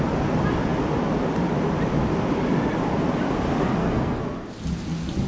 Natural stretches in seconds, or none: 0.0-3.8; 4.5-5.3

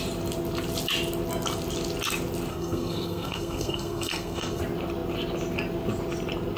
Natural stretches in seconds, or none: 0.0-2.5; 4.6-6.6